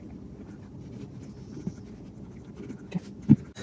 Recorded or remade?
recorded